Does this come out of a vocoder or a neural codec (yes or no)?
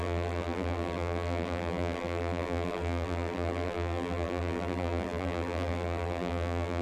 yes